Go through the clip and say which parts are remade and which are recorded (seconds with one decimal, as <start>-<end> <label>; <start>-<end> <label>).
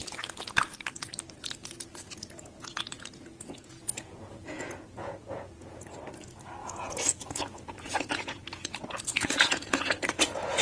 0.0-1.6 recorded; 1.6-6.0 remade; 6.0-6.6 recorded; 6.6-10.6 remade